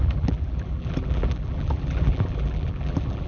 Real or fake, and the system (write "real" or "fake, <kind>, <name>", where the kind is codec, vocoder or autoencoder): fake, vocoder, BigVGAN v2